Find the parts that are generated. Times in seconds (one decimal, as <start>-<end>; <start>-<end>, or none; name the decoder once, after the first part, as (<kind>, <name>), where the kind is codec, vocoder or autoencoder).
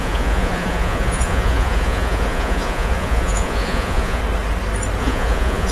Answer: 0.0-4.2 (vocoder, Vocos); 5.0-5.7